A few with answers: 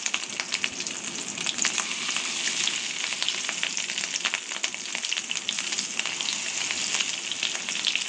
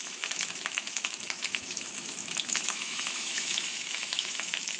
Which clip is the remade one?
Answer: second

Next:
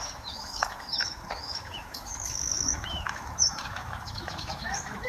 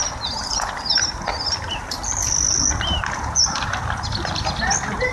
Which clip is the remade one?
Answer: first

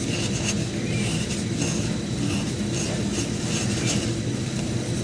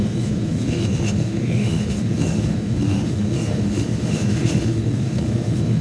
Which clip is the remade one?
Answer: second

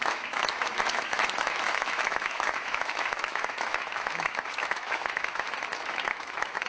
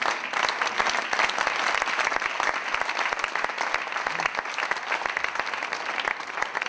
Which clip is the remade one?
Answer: first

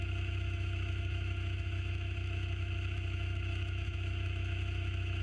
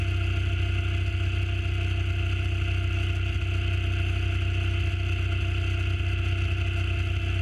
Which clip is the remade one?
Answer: first